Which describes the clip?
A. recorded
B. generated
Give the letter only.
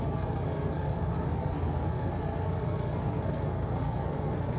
B